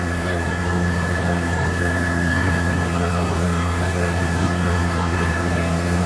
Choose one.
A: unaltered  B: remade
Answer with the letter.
B